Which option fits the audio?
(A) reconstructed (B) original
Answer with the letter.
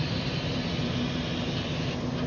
B